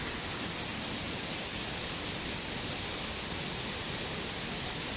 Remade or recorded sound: recorded